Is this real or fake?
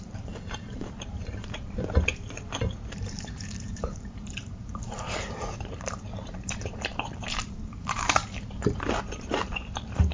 fake